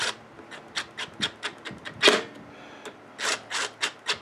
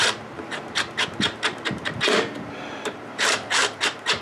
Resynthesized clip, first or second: second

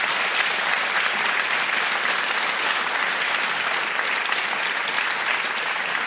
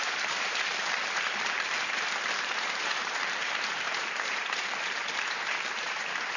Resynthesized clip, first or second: second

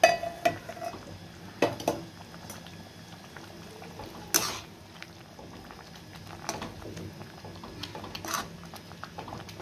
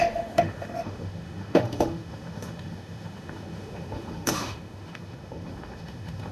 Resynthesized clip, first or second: second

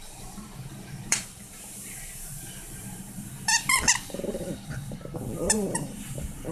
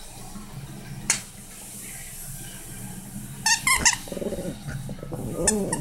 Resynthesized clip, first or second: first